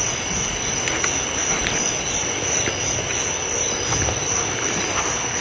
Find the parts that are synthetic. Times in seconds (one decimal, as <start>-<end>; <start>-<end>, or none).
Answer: none